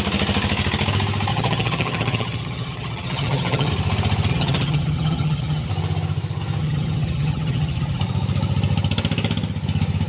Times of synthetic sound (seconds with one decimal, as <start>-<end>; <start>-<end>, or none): 1.3-3.7; 4.3-5.7; 6.6-8.0